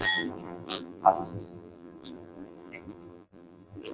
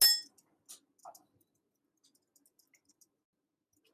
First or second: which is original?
second